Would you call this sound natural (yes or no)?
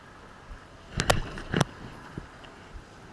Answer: yes